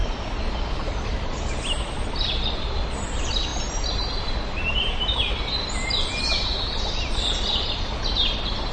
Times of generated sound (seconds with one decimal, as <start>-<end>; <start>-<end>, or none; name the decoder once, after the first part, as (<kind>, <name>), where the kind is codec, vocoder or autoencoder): none

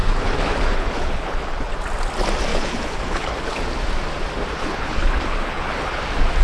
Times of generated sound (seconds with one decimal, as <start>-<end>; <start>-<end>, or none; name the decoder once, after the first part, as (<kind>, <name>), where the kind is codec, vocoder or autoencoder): 0.0-1.7 (codec, HILCodec); 2.5-3.6; 4.6-6.0

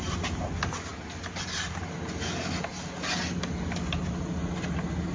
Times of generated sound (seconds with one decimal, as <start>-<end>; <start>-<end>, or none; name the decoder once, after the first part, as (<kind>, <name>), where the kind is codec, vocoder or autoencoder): none